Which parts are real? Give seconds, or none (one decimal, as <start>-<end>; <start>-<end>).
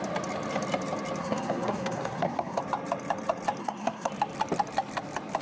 0.0-1.2; 2.6-3.6; 4.1-5.4